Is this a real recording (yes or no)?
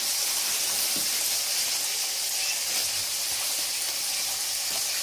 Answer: yes